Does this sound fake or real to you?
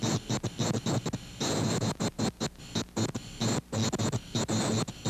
real